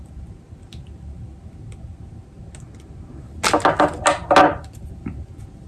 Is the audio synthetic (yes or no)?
no